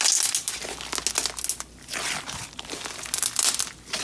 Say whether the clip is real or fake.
real